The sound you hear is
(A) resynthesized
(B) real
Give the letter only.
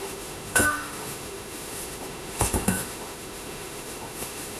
A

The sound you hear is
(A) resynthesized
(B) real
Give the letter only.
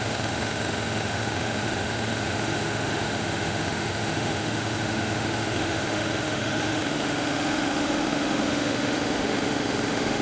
A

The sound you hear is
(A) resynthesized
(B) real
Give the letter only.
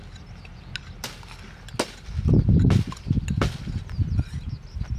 B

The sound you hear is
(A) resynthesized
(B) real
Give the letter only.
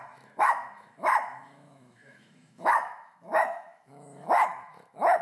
A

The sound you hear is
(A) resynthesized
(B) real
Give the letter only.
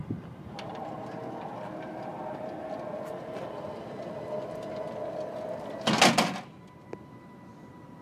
B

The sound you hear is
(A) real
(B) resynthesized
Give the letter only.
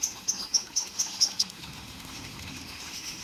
B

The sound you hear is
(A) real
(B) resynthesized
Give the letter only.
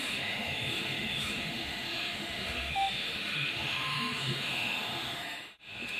B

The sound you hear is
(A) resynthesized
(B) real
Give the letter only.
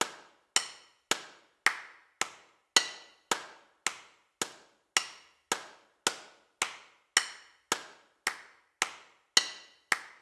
B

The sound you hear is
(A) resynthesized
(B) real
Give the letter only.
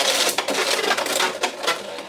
B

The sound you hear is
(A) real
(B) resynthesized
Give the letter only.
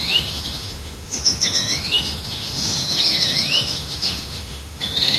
B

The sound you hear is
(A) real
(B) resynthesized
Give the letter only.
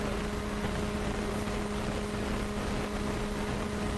A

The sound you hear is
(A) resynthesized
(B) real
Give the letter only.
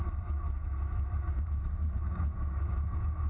A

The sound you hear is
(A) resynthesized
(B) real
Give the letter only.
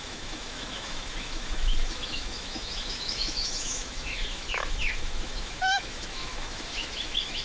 A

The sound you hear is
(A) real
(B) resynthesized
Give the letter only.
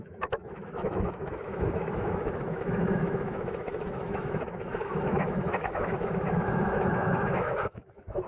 B